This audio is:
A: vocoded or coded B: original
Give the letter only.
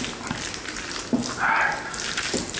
B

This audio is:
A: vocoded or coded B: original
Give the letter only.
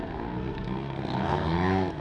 A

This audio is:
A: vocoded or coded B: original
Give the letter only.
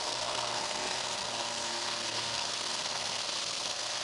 A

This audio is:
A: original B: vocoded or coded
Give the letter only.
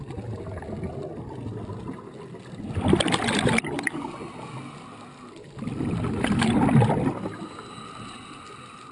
A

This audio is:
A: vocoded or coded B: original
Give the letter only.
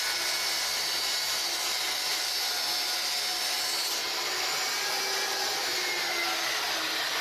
B